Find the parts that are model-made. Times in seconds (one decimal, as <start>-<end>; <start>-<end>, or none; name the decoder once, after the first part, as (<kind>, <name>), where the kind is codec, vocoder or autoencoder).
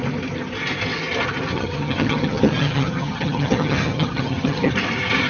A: 1.5-4.7 (vocoder, HiFi-GAN)